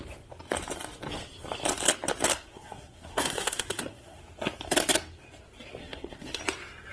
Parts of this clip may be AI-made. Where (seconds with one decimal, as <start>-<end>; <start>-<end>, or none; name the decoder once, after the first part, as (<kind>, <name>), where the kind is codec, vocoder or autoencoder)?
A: 2.3-4.2 (codec, SNAC); 5.8-6.4